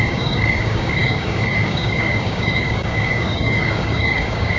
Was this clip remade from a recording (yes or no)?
yes